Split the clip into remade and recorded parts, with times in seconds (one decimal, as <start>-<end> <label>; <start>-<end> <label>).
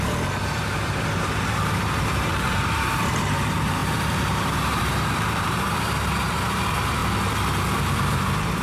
0.0-7.0 remade; 7.0-8.1 recorded; 8.1-8.6 remade